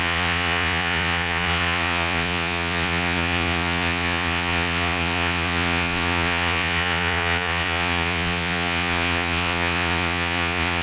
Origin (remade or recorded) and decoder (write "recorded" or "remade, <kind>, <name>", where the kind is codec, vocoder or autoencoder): remade, vocoder, Vocos